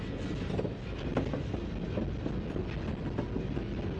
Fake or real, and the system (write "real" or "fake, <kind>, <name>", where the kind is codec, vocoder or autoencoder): real